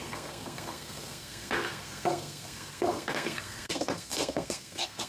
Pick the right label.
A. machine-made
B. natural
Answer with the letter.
A